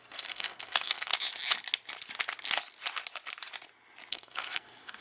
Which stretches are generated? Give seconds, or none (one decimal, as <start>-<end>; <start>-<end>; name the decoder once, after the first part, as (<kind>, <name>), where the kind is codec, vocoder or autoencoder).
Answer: 0.0-1.1 (codec, SNAC); 4.1-5.0